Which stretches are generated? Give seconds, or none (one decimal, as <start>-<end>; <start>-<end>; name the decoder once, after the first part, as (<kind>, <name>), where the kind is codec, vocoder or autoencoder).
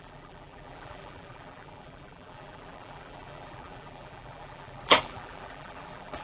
0.0-6.2 (vocoder, BigVGAN v2)